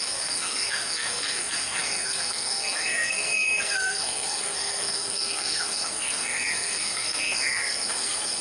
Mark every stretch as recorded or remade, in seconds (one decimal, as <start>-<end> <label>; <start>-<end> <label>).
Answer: 0.0-8.4 remade